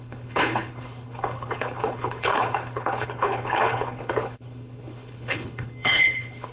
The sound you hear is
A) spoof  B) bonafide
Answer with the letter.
A